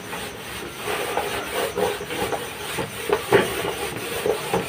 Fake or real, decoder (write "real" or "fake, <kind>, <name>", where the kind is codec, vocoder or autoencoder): real